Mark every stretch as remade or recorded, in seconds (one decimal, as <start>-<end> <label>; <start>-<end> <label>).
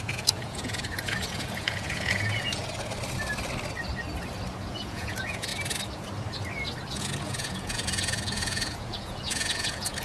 0.0-2.6 remade; 2.6-4.7 recorded; 4.7-5.5 remade; 5.5-6.9 recorded; 6.9-10.0 remade